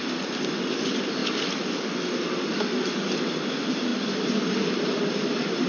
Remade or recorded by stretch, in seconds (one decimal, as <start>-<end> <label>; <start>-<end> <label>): 0.0-5.7 recorded